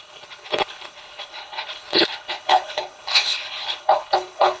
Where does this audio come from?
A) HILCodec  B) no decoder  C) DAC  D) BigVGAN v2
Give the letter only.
A